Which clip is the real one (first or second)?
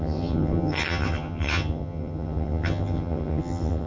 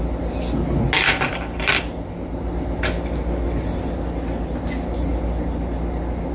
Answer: second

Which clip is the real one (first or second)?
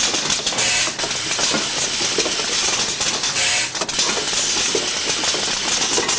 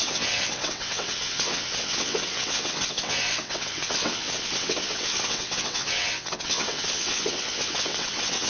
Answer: first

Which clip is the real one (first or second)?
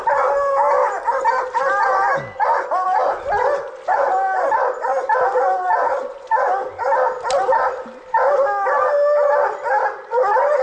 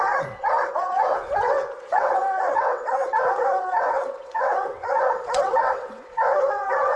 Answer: first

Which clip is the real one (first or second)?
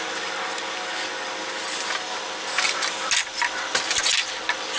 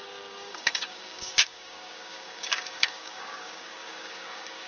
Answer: first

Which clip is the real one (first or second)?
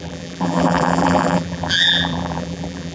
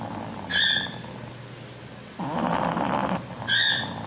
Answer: second